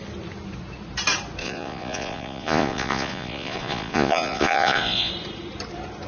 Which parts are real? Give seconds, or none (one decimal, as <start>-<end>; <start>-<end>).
0.0-1.4; 5.1-6.1